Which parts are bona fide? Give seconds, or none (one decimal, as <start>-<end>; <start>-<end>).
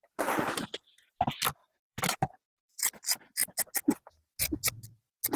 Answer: 0.0-1.6; 2.8-5.4